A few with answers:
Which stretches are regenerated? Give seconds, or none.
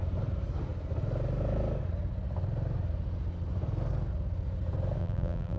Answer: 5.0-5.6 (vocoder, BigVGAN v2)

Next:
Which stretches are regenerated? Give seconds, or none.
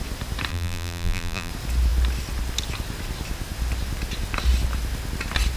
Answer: 0.5-1.5 (vocoder, BigVGAN v2)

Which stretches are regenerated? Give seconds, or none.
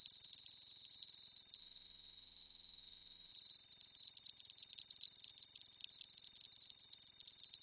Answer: 1.6-3.3 (vocoder, HiFi-GAN)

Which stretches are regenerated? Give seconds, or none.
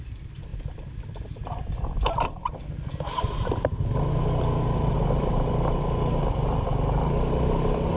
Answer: none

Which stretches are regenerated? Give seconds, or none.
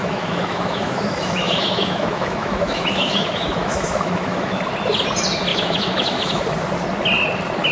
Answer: 0.0-4.6 (autoencoder, DAC-VAE); 5.5-6.4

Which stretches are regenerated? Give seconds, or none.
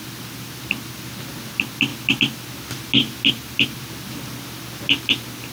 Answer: none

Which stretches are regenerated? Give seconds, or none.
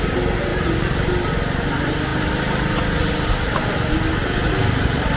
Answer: 0.5-1.4 (vocoder, BigVGAN v2)